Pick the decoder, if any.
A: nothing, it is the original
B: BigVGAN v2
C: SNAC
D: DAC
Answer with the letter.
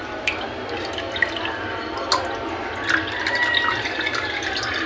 A